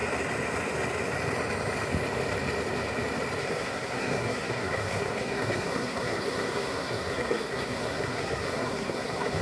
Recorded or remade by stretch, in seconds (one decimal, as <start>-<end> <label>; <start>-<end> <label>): 0.0-3.4 recorded; 3.4-9.4 remade